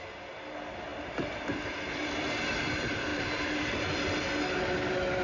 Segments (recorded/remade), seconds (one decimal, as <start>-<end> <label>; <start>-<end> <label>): 0.0-0.9 recorded; 0.9-2.1 remade; 2.1-3.1 recorded; 3.1-4.2 remade; 4.2-5.2 recorded